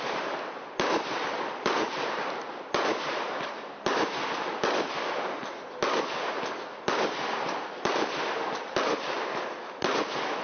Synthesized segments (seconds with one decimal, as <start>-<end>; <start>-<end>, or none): none